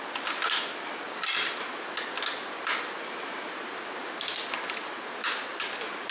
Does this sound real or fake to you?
real